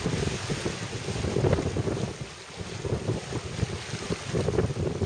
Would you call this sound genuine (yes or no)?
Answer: yes